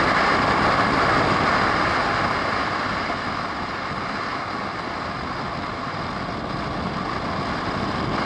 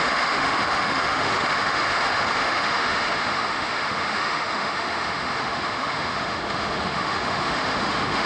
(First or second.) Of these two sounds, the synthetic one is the second